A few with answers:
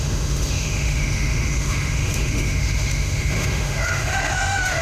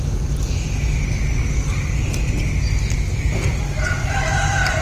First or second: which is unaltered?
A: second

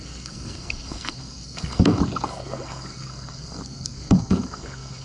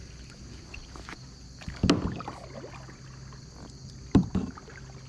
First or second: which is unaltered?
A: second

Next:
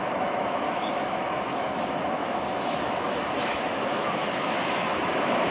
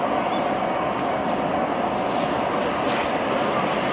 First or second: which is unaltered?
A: second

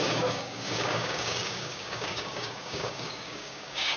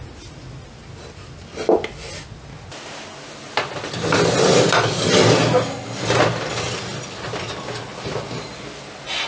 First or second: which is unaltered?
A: second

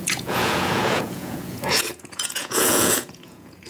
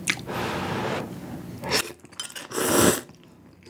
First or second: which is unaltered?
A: second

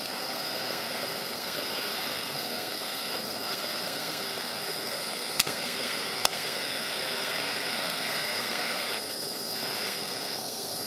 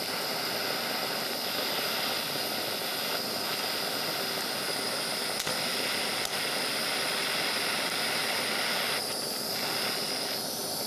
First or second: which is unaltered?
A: second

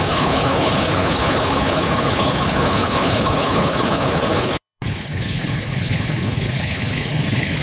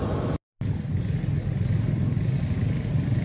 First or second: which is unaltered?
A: second